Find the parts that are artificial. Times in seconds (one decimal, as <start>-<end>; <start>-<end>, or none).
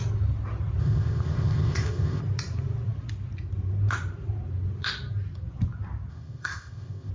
0.8-2.2; 6.1-7.1